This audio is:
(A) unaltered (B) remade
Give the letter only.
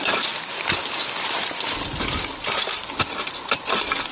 A